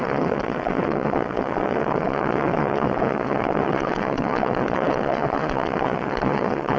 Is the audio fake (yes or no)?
yes